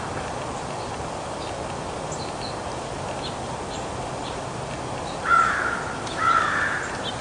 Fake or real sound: real